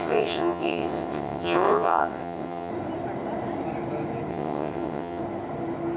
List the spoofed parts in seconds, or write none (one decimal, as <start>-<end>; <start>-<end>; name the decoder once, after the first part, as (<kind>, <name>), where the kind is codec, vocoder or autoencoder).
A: 0.0-2.7 (vocoder, WaveNeXt); 4.3-5.2